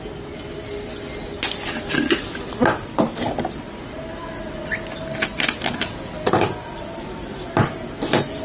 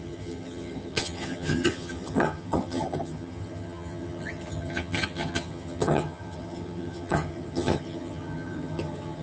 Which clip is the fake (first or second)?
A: second